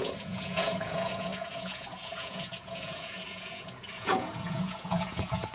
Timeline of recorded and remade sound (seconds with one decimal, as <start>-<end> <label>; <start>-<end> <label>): 0.0-5.5 remade